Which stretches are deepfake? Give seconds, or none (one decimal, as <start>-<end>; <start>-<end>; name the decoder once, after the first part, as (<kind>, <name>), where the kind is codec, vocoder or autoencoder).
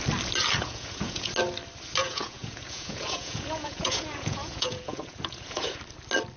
0.6-1.3 (vocoder, Vocos); 2.0-5.8